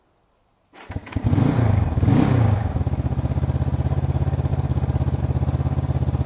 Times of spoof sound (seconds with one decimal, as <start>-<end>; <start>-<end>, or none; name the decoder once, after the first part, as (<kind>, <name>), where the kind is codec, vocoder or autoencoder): 1.0-2.8 (codec, DAC)